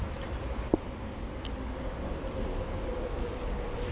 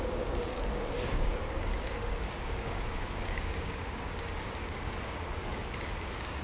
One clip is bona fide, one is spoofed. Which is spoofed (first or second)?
second